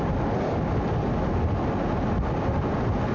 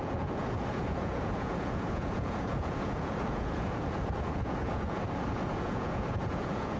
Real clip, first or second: first